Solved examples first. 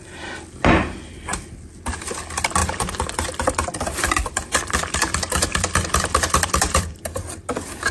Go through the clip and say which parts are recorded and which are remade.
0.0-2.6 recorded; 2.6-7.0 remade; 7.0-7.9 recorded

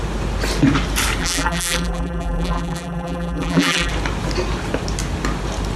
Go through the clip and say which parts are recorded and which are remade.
0.0-1.2 recorded; 1.2-3.9 remade; 3.9-5.8 recorded

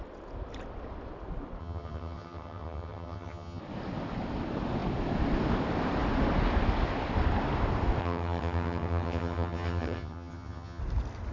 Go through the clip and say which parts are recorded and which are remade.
0.0-1.6 recorded; 1.6-3.6 remade; 3.6-8.0 recorded; 8.0-10.8 remade; 10.8-11.3 recorded

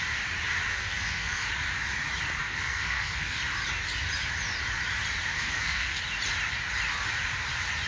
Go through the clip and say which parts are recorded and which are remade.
0.0-0.7 recorded; 0.7-1.5 remade; 1.5-2.4 recorded; 2.4-3.4 remade; 3.4-5.3 recorded; 5.3-6.0 remade; 6.0-7.9 recorded